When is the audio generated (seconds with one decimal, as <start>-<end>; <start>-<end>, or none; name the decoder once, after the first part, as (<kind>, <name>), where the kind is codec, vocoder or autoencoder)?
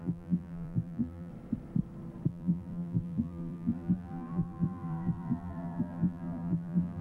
0.0-1.3 (vocoder, BigVGAN v2); 2.3-7.0